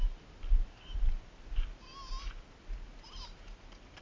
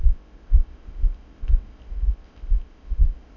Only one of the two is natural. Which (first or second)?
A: first